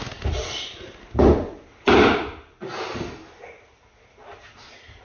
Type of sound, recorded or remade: recorded